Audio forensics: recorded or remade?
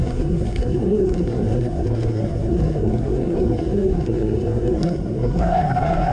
remade